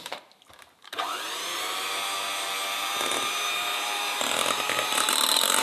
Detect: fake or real fake